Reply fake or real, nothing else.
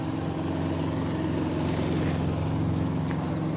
real